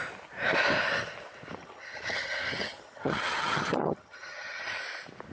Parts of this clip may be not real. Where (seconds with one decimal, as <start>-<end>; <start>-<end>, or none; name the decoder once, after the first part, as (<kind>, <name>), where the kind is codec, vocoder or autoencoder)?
1.6-4.8 (vocoder, HiFi-GAN)